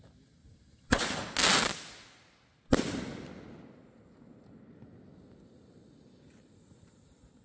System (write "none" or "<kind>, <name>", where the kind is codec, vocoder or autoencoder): none